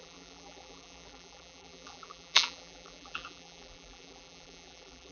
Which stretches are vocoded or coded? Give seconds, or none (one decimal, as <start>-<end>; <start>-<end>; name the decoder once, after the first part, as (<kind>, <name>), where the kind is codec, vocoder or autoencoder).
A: 0.0-5.1 (vocoder, BigVGAN v2)